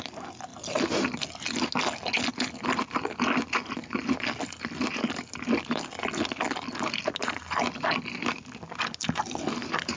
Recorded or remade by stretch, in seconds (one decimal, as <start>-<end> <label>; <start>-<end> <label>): 0.0-10.0 recorded